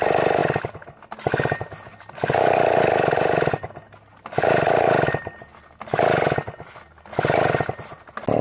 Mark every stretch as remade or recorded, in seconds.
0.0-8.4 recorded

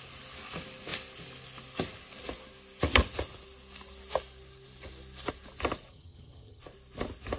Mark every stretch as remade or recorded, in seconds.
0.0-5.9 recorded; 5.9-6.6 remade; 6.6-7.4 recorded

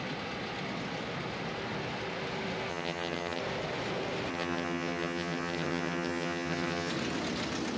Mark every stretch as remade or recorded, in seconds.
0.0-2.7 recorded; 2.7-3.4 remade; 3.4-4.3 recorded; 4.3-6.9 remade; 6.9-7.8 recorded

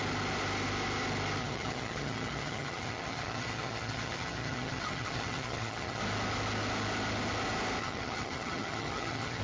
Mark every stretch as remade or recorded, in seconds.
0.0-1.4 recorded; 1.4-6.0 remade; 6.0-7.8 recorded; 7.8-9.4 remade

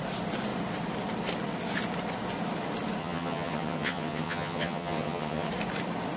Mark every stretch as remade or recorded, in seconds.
0.0-3.0 recorded; 3.0-5.5 remade; 5.5-6.2 recorded